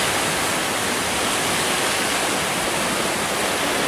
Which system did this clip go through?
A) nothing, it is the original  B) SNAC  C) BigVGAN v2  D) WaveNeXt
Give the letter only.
A